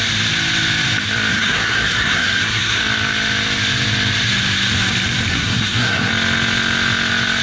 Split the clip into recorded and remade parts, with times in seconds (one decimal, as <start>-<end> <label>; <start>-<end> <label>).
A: 0.0-1.3 recorded; 1.3-2.8 remade; 2.8-5.3 recorded; 5.3-6.1 remade; 6.1-7.4 recorded